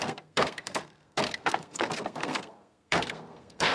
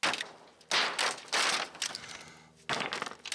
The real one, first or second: second